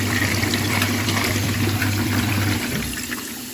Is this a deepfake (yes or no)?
yes